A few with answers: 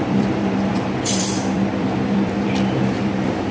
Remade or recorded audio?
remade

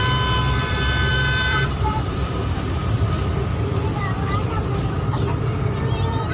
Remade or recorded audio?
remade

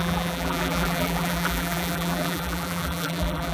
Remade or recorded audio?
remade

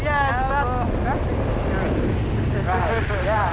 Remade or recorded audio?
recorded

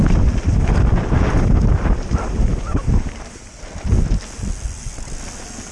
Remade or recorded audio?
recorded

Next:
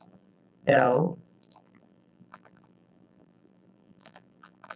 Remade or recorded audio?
remade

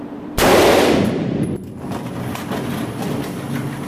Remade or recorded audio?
remade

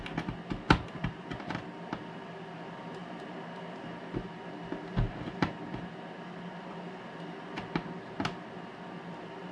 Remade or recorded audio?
recorded